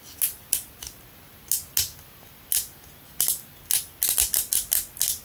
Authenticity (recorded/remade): recorded